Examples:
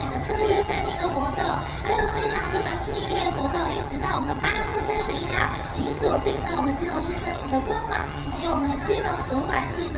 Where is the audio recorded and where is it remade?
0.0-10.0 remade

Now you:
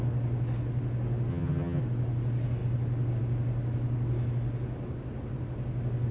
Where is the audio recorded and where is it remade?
0.0-1.3 recorded; 1.3-1.8 remade; 1.8-6.1 recorded

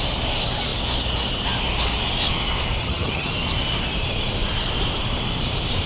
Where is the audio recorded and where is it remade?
0.0-2.8 recorded; 2.8-3.3 remade; 3.3-5.9 recorded

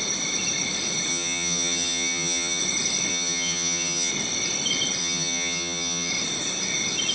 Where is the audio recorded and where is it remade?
0.0-1.1 recorded; 1.1-2.6 remade; 2.6-3.1 recorded; 3.1-4.1 remade; 4.1-5.0 recorded; 5.0-6.1 remade; 6.1-7.1 recorded

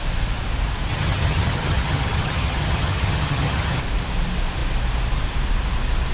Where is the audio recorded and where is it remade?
0.0-0.9 recorded; 0.9-3.8 remade; 3.8-6.1 recorded